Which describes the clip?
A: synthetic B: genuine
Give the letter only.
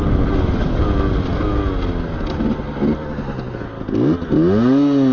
B